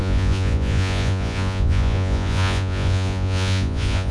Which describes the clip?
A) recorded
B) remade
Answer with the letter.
B